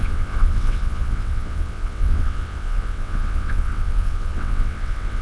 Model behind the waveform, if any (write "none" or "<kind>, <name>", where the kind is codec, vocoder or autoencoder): vocoder, WaveNeXt